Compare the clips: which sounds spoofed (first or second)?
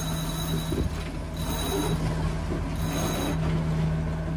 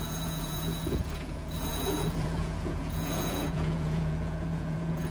second